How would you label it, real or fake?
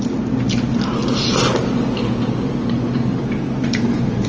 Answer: real